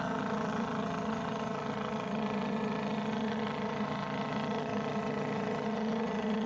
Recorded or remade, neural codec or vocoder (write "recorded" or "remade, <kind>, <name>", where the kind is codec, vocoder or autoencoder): remade, vocoder, HiFi-GAN